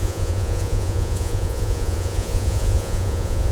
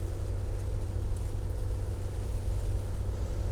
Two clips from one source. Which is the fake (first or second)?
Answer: first